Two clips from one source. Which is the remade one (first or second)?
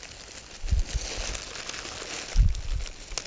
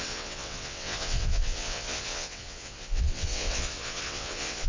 second